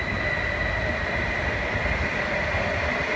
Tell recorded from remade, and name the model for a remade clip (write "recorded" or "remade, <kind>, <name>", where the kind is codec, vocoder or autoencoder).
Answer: recorded